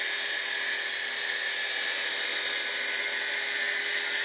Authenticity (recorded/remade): recorded